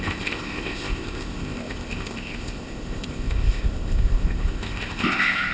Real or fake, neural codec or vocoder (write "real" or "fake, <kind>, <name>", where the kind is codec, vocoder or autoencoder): fake, codec, ZipCodec